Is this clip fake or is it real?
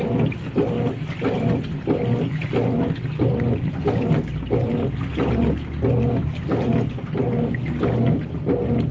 real